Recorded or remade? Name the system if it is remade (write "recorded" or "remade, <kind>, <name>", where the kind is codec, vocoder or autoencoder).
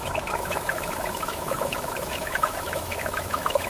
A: remade, autoencoder, DAC-VAE